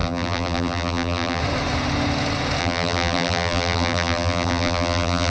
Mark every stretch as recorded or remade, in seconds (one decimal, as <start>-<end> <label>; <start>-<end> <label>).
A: 0.0-1.4 remade; 1.4-2.6 recorded; 2.6-5.3 remade